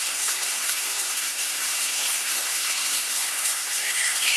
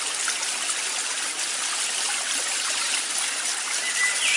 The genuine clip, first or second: second